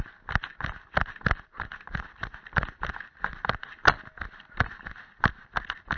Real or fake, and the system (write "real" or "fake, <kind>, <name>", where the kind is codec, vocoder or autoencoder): real